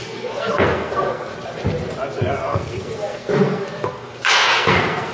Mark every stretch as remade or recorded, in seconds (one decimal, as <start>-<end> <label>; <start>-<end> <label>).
0.0-1.3 remade; 1.3-2.3 recorded; 2.3-5.1 remade